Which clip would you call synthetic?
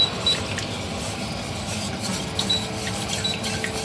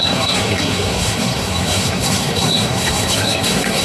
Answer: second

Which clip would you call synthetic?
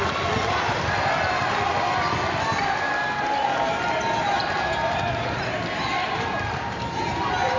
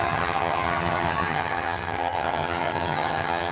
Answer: second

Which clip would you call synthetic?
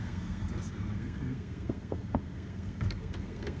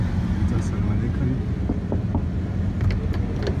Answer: first